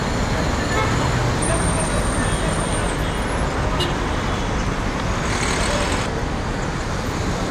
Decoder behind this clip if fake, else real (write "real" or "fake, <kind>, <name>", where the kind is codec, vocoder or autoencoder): real